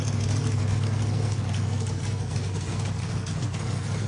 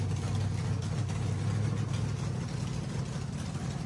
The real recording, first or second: second